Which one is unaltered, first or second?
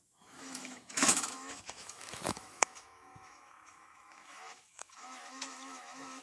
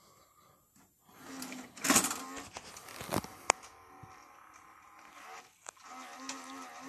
second